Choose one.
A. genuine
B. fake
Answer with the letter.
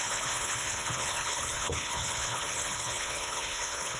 B